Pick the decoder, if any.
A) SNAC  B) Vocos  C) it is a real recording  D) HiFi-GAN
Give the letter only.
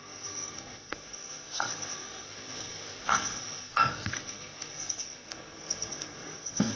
A